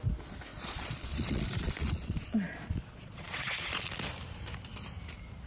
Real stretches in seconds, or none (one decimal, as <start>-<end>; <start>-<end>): 0.0-0.5; 3.8-5.5